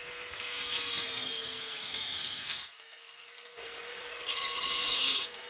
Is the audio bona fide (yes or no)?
no